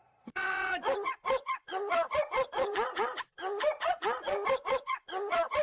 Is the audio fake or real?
fake